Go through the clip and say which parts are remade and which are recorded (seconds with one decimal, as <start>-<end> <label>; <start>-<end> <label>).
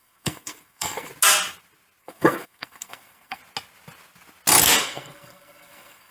0.0-1.1 remade; 1.1-2.0 recorded; 2.0-3.4 remade; 3.4-4.8 recorded; 4.8-6.1 remade